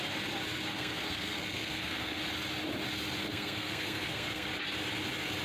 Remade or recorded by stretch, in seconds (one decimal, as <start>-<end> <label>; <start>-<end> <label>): 0.0-0.7 recorded; 0.7-2.2 remade; 2.2-3.2 recorded; 3.2-4.5 remade; 4.5-5.4 recorded